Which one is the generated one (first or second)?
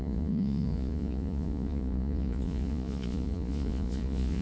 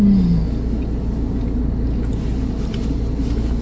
first